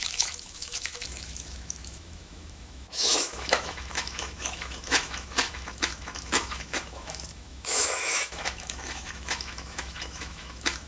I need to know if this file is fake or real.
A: fake